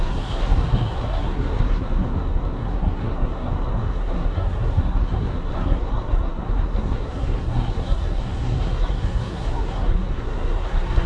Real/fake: fake